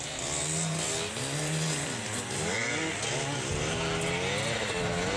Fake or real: real